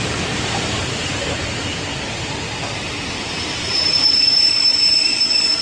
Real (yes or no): yes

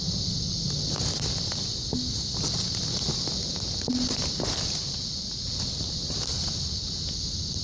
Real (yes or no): yes